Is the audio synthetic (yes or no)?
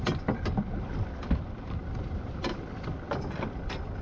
no